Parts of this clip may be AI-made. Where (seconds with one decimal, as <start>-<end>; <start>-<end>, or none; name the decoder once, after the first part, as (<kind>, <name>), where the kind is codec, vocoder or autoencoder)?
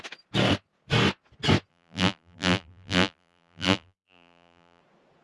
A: 1.7-4.8 (vocoder, BigVGAN v2)